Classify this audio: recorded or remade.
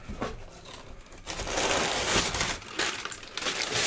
recorded